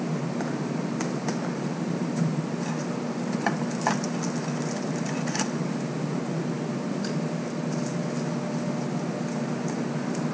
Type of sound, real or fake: real